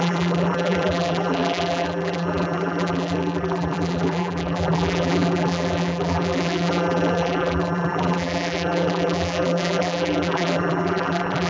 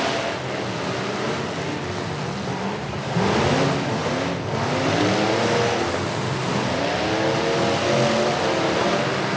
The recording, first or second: second